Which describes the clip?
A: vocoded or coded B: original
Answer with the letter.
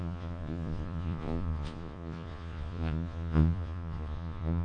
A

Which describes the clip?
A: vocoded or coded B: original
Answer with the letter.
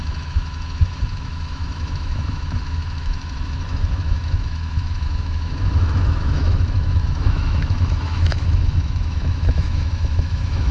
A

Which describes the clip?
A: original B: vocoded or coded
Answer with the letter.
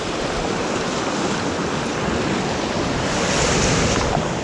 A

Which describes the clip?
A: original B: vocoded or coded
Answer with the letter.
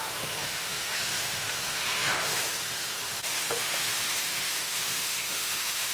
B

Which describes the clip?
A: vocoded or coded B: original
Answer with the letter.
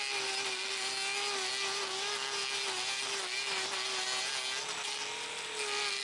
B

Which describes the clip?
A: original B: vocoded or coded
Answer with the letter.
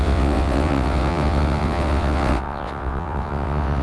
B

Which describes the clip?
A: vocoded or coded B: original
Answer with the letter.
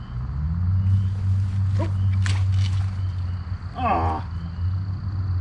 B